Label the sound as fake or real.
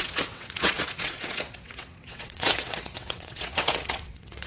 fake